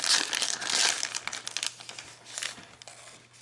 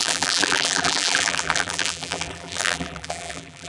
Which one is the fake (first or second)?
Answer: second